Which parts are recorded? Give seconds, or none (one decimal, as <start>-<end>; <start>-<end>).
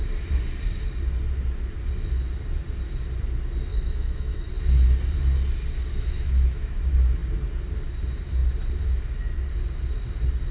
0.0-3.7; 4.5-5.9; 6.8-10.5